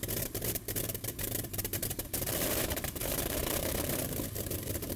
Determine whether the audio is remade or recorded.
remade